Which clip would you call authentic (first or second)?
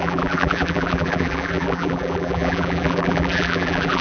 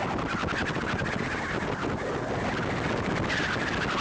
second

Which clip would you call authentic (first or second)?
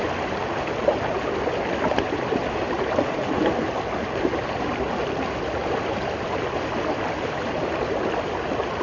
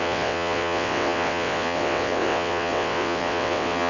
first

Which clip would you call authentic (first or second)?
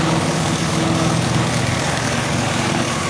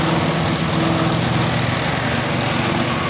second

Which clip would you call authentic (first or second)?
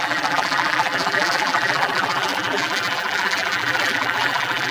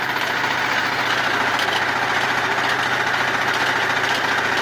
second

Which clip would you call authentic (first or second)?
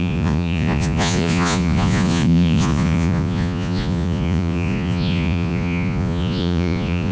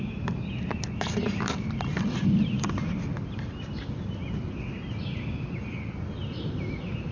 second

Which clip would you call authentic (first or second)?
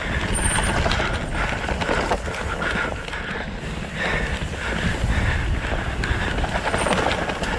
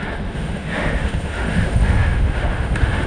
first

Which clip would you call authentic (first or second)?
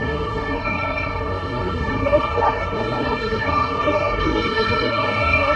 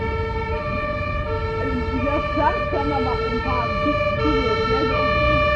second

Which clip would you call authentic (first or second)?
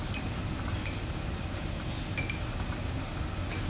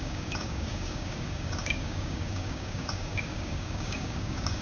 first